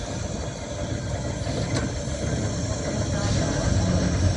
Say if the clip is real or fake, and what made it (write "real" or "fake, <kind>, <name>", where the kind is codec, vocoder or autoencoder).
real